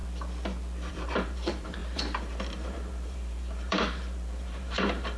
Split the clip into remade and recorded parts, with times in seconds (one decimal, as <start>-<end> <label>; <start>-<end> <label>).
0.0-0.9 recorded; 0.9-5.2 remade